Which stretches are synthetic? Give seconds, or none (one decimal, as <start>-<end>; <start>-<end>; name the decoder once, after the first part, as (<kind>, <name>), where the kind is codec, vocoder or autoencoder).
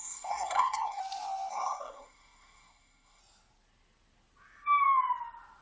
0.0-1.0 (codec, SNAC); 1.5-3.2